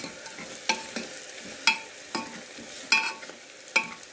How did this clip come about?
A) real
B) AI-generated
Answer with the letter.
A